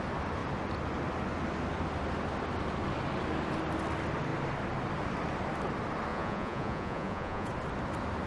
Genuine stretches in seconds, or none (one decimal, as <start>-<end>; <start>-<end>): 0.0-6.1; 7.5-8.3